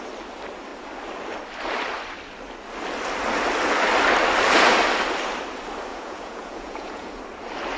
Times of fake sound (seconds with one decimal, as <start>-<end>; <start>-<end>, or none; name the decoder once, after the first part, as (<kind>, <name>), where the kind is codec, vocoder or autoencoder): 5.9-7.2 (vocoder, Vocos)